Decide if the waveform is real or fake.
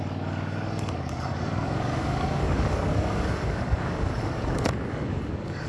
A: fake